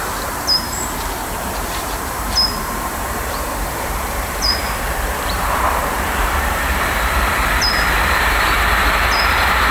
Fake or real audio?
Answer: fake